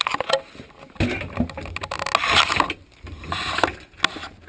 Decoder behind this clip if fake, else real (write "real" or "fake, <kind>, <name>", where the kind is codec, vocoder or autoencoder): real